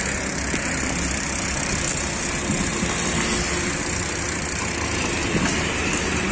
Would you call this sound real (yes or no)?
yes